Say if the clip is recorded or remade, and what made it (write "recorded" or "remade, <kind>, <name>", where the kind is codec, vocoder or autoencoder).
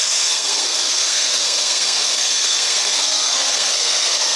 remade, codec, SNAC